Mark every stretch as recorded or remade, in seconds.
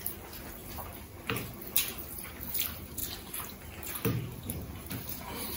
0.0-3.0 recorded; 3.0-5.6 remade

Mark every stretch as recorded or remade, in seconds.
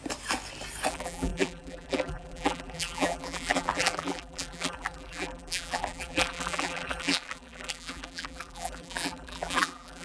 0.0-0.9 recorded; 0.9-10.0 remade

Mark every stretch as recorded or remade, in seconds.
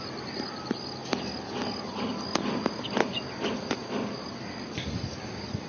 0.0-5.7 recorded